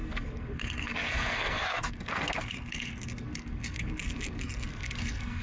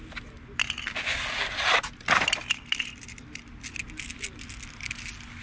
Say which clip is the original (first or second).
second